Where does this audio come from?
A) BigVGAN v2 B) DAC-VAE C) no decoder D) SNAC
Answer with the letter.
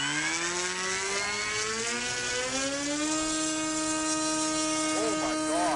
C